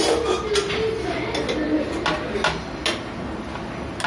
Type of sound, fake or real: real